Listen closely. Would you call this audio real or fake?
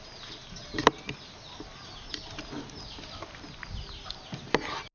real